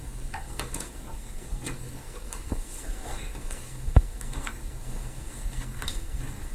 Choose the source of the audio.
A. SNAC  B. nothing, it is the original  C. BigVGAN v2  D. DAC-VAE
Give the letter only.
A